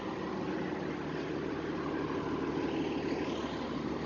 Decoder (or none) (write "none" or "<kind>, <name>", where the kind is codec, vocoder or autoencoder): none